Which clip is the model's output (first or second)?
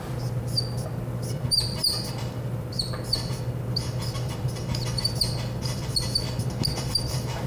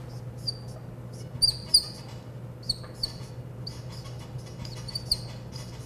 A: first